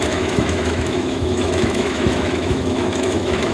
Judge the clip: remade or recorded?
remade